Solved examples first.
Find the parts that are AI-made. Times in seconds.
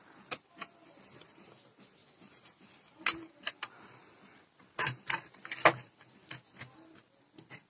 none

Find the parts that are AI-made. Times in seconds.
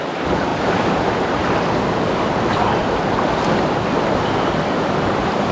none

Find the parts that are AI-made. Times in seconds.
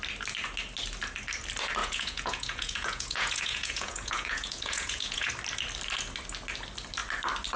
1.8-5.3 (vocoder, Vocos)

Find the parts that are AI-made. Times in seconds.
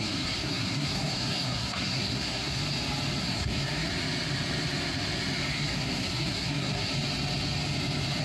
0.0-2.6 (codec, SNAC); 3.2-3.9; 5.5-6.9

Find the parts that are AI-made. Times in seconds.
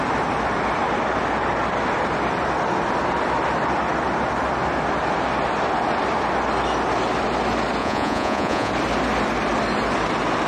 7.8-8.7 (vocoder, Vocos)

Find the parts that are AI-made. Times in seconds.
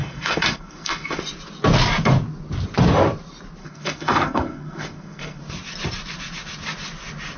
0.0-1.2 (codec, SNAC); 3.6-5.4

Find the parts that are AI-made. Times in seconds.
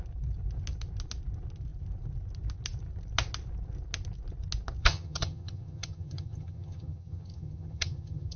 4.8-8.4 (vocoder, HiFi-GAN)